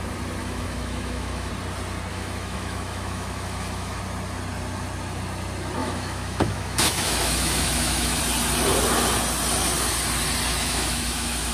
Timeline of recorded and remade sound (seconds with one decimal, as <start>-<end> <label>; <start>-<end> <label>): 0.0-0.4 recorded; 0.4-1.5 remade; 1.5-2.1 recorded; 2.1-4.0 remade; 4.0-5.8 recorded; 5.8-8.2 remade; 8.2-10.5 recorded; 10.5-11.5 remade